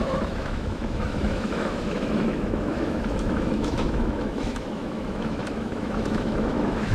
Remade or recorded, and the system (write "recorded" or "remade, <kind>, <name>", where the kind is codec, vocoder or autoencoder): remade, autoencoder, DAC-VAE